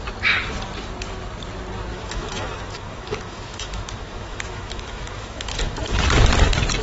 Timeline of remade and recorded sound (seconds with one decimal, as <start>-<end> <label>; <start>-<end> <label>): 0.0-1.9 recorded; 1.9-6.0 remade; 6.0-6.8 recorded